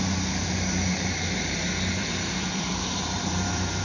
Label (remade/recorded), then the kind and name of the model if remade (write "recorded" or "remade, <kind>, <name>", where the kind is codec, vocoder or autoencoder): remade, vocoder, BigVGAN v2